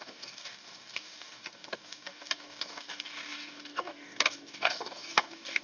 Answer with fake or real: fake